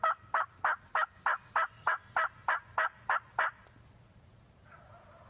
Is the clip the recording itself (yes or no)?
yes